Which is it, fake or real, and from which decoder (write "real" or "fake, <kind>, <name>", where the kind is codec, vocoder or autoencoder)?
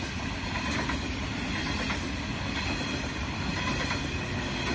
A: real